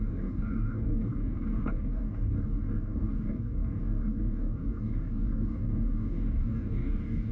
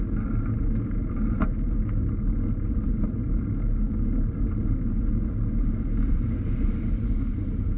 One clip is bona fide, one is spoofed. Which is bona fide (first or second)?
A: second